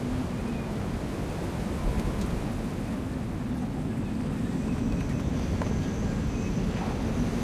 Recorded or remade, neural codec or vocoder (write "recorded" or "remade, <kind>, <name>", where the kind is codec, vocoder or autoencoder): recorded